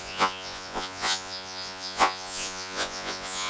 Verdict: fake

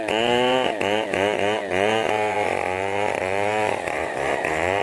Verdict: fake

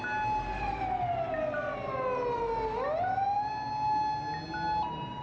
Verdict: real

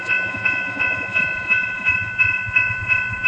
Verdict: fake